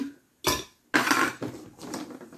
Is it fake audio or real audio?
real